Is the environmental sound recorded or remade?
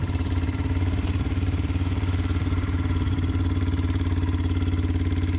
remade